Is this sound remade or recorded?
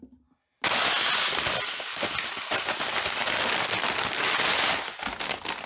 recorded